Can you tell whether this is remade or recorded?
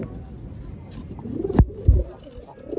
recorded